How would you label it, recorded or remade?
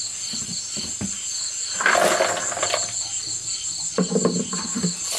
recorded